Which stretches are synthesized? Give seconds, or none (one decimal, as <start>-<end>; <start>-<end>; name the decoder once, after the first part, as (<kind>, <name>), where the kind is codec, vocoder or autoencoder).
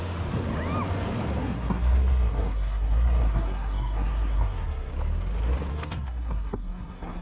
1.4-4.9 (codec, SNAC); 5.7-7.2